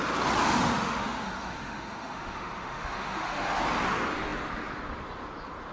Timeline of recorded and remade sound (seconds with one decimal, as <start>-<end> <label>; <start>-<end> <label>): 0.0-0.4 recorded; 0.4-3.6 remade; 3.6-5.7 recorded